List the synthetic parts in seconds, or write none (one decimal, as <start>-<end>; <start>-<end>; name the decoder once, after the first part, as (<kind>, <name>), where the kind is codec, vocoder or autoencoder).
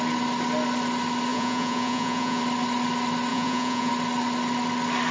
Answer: 1.3-2.4 (vocoder, Vocos); 3.3-3.9